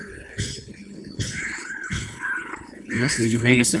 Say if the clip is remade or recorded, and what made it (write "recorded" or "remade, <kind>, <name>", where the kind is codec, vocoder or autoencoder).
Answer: remade, codec, HILCodec